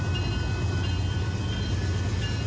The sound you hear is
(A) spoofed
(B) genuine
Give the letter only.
B